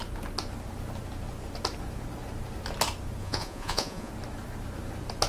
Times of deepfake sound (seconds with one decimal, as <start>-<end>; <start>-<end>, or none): 3.2-4.1